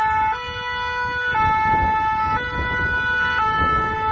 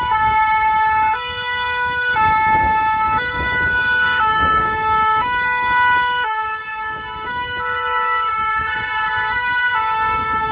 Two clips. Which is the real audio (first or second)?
first